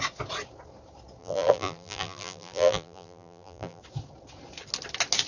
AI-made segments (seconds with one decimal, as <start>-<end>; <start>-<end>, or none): 1.2-3.8